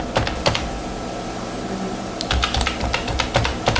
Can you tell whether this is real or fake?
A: real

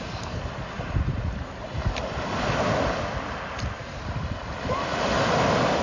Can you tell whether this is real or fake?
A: real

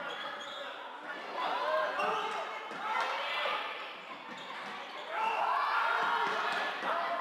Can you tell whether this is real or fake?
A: real